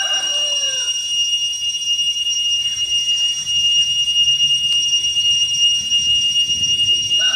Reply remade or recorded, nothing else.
recorded